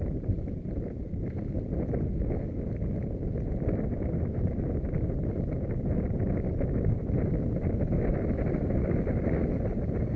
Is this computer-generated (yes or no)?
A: no